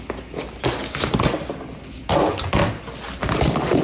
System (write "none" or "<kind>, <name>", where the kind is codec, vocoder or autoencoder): none